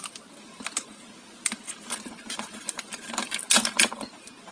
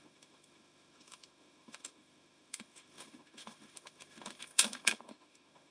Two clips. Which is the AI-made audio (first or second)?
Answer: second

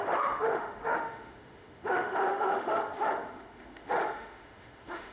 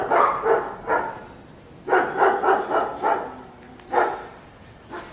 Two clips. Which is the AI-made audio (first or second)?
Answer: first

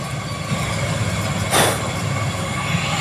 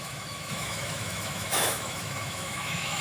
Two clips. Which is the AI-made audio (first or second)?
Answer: second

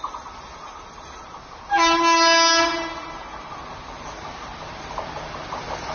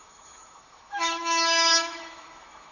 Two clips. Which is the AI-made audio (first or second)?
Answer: second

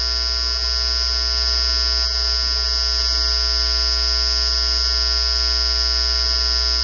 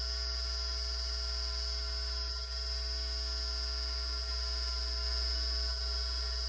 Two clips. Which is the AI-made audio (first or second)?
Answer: second